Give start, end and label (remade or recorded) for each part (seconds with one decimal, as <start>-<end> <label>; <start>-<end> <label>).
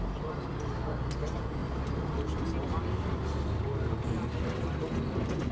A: 0.0-5.5 recorded